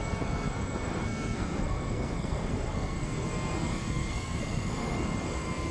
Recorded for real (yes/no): no